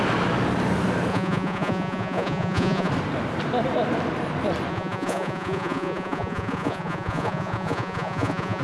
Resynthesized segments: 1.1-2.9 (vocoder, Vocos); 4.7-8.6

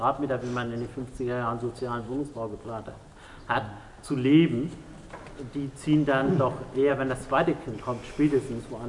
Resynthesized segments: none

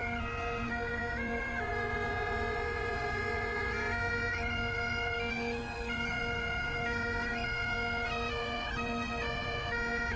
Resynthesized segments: 0.0-10.2 (vocoder, Vocos)